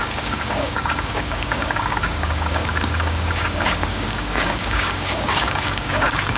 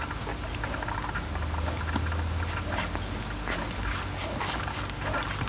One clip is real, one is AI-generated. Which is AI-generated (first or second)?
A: first